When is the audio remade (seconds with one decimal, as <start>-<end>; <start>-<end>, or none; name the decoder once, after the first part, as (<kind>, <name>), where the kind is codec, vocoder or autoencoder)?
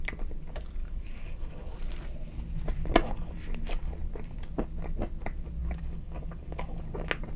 0.8-1.7 (codec, DAC); 5.6-6.8